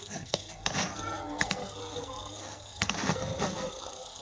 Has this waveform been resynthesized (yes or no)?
yes